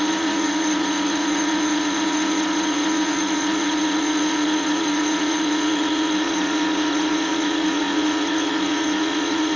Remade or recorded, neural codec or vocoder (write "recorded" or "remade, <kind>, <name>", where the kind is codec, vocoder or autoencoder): remade, vocoder, Vocos